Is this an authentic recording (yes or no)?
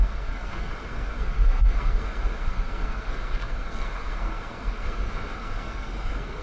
no